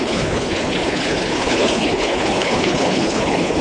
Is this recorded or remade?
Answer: remade